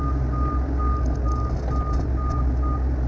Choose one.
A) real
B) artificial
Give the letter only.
A